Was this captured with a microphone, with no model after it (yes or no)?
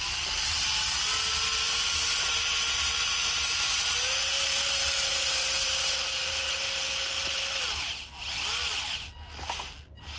yes